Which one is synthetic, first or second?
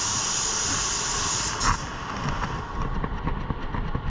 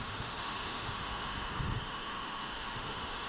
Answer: second